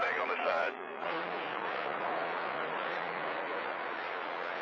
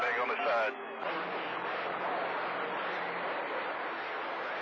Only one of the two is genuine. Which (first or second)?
second